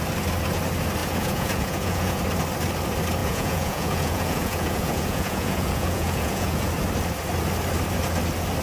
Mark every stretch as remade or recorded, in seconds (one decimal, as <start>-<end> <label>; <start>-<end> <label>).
0.0-1.0 recorded; 1.0-2.2 remade; 2.2-3.2 recorded; 3.2-6.7 remade; 6.7-8.6 recorded